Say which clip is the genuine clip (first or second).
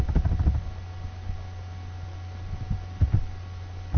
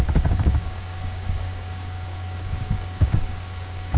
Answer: first